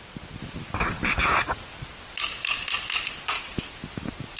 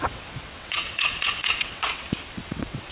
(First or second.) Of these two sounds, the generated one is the second